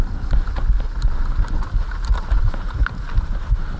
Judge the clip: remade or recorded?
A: recorded